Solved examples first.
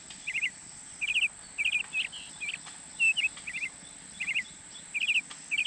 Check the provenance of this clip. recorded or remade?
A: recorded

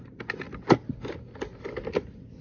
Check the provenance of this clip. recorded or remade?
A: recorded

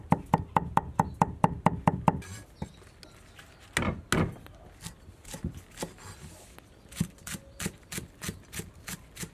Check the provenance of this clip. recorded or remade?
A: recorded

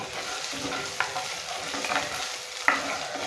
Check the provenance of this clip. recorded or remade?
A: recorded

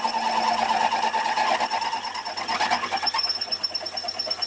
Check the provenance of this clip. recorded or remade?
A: recorded